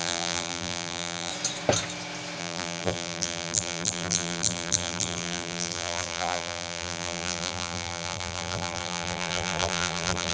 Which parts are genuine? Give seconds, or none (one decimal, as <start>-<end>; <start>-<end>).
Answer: 1.3-2.4